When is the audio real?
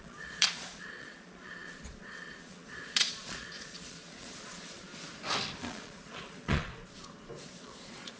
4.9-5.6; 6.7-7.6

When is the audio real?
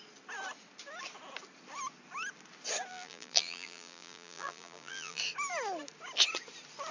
0.0-2.9; 5.2-6.9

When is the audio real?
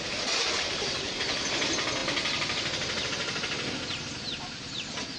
0.0-5.2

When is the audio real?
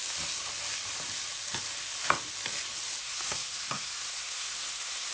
0.0-3.0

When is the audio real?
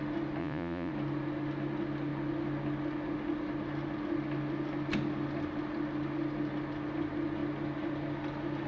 0.0-0.4; 0.9-8.7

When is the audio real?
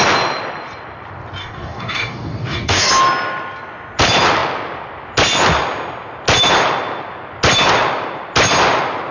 0.0-1.4; 2.9-9.1